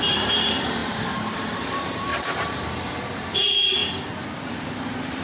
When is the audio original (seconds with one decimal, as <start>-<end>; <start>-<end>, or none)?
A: 3.8-4.5